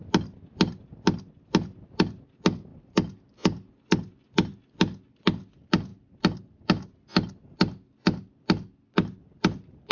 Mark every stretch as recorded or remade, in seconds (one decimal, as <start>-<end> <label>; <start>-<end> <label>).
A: 0.0-2.7 recorded; 2.7-4.6 remade; 4.6-9.9 recorded